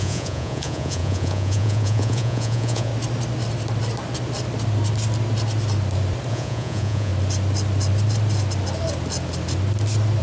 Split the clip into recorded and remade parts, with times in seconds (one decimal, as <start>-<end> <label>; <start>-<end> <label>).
0.0-2.9 remade; 2.9-6.3 recorded; 6.3-7.1 remade; 7.1-10.2 recorded